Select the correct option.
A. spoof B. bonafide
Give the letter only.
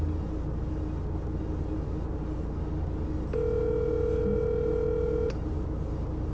B